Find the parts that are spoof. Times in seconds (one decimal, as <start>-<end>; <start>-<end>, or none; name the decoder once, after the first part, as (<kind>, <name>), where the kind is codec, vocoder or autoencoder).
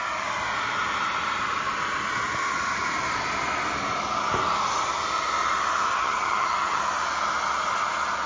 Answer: 5.9-6.8 (vocoder, HiFi-GAN)